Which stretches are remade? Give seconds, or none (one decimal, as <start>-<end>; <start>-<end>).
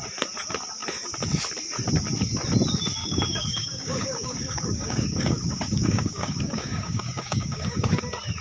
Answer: 3.0-8.0